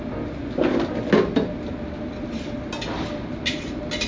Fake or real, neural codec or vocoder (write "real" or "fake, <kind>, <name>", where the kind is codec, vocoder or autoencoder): real